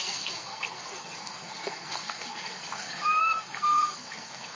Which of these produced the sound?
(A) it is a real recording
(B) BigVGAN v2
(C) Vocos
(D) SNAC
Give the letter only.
D